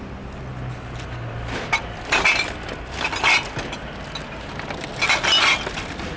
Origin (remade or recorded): recorded